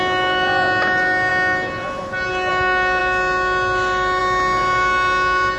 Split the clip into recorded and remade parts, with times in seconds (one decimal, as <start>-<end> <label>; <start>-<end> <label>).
0.0-5.6 recorded